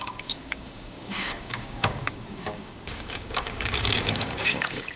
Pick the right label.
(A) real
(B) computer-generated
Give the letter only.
B